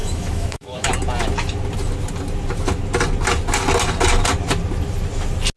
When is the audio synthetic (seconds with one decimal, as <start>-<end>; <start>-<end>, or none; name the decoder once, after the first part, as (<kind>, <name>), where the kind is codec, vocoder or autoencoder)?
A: 0.0-0.9 (autoencoder, DAC-VAE)